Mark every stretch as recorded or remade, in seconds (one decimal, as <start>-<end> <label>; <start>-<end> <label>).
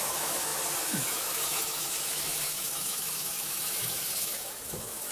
0.0-5.1 remade